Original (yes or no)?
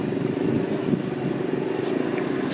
yes